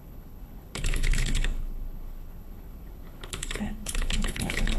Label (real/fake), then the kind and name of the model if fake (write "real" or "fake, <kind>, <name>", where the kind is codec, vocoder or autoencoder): fake, codec, HILCodec